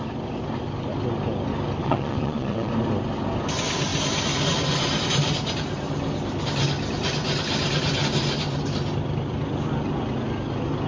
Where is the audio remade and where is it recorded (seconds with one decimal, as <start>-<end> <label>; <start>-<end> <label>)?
0.0-1.8 recorded; 1.8-2.7 remade; 2.7-10.9 recorded